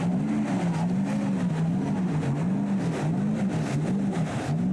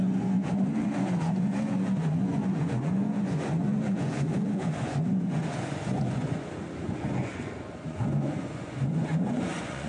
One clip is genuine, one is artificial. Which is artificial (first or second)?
second